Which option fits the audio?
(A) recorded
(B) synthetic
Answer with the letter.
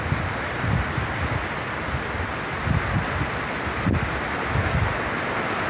A